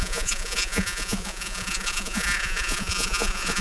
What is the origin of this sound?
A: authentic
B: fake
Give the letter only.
B